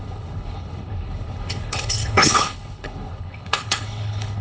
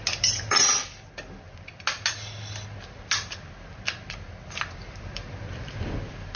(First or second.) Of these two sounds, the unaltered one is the second